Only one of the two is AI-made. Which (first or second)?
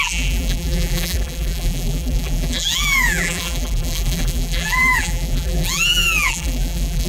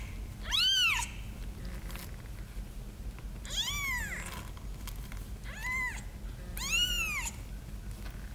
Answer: first